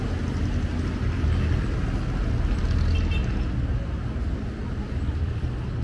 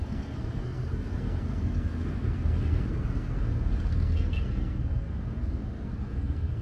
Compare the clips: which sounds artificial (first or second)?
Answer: second